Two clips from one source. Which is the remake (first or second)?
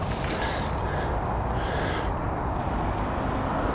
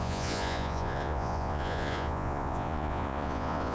second